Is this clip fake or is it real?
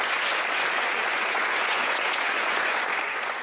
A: fake